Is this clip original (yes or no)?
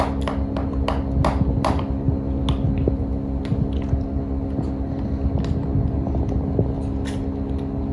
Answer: yes